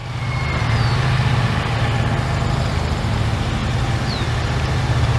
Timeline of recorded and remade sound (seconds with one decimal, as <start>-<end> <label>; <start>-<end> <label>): 0.0-3.6 recorded; 3.6-4.3 remade; 4.3-5.2 recorded